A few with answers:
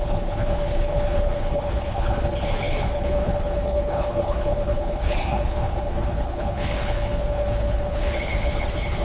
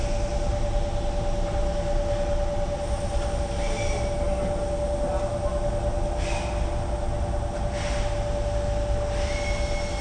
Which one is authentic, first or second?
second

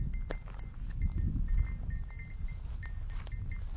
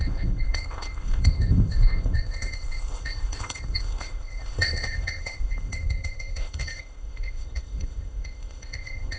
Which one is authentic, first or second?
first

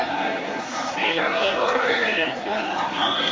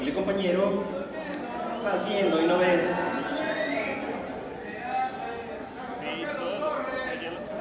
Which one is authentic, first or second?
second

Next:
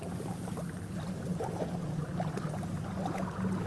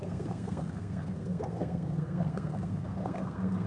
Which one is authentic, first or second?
first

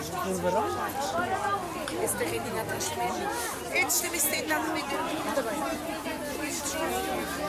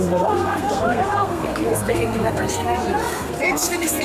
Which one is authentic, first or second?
first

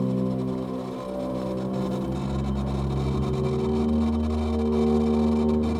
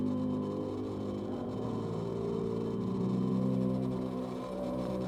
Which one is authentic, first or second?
first